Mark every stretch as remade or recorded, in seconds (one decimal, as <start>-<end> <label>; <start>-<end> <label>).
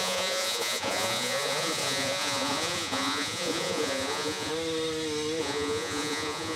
0.0-4.5 remade; 4.5-5.4 recorded; 5.4-6.6 remade